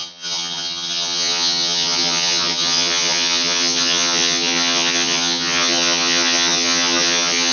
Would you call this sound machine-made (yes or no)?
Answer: yes